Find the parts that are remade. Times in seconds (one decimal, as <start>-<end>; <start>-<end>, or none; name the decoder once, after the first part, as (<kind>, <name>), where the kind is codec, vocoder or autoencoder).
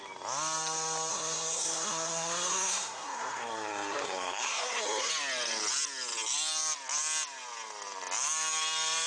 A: 1.1-5.1 (codec, SNAC)